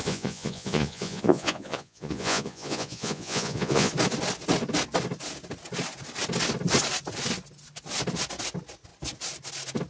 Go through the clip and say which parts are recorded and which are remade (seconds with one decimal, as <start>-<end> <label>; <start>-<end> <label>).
0.0-3.9 remade; 3.9-9.9 recorded